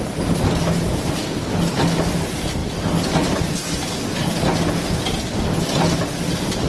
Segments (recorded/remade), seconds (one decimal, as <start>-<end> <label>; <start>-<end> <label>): 0.0-6.7 recorded